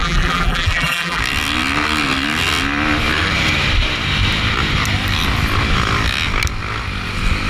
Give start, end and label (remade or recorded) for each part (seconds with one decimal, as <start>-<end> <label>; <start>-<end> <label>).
0.0-1.2 remade; 1.2-7.5 recorded